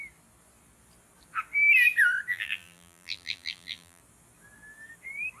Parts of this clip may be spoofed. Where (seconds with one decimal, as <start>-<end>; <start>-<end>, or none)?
2.3-4.0